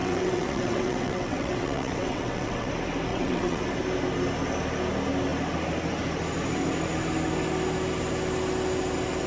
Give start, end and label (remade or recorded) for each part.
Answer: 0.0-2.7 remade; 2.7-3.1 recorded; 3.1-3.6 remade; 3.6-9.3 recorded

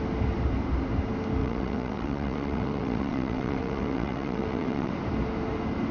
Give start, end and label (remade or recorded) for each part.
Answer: 0.0-1.4 recorded; 1.4-4.9 remade; 4.9-5.9 recorded

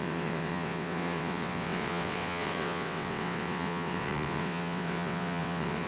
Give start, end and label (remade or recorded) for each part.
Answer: 0.0-5.9 remade

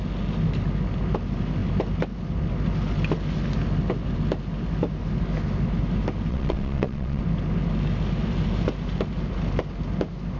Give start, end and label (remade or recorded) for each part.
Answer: 0.0-6.3 recorded; 6.3-7.2 remade; 7.2-10.4 recorded

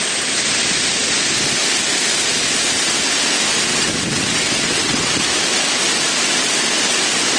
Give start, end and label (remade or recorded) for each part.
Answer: 0.0-3.7 recorded; 3.7-5.2 remade; 5.2-7.4 recorded

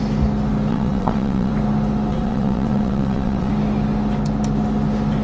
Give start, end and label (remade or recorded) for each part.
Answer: 0.0-0.7 recorded; 0.7-1.5 remade; 1.5-2.1 recorded; 2.1-3.5 remade; 3.5-5.2 recorded

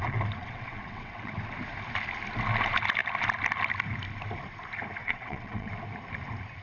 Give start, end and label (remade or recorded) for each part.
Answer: 0.0-0.4 recorded; 0.4-1.3 remade; 1.3-5.0 recorded; 5.0-5.7 remade; 5.7-6.6 recorded